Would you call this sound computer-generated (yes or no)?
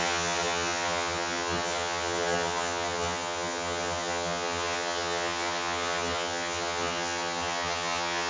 yes